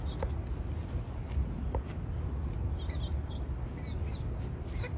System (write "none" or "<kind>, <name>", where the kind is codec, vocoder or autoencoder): none